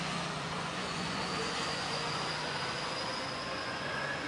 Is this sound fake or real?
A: fake